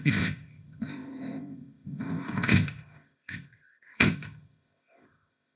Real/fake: fake